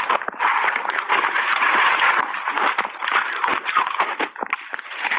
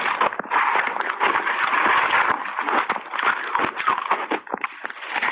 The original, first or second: second